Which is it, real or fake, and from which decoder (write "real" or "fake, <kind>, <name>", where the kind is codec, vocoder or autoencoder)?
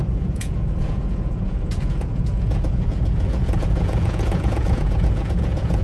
fake, vocoder, Vocos